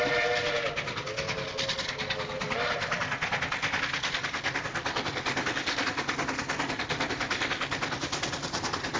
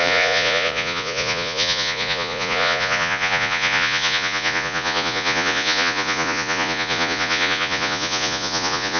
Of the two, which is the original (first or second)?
first